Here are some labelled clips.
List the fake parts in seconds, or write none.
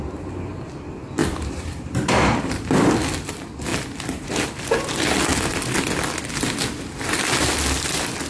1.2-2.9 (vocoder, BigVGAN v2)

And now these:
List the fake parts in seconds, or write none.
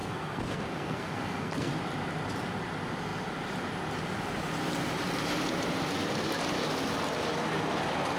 0.0-1.7 (codec, SNAC)